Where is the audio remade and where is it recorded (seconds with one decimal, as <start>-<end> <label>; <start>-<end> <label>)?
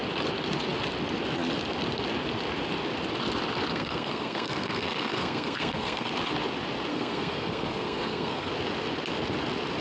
0.0-3.7 recorded; 3.7-6.1 remade; 6.1-6.9 recorded; 6.9-8.5 remade; 8.5-9.8 recorded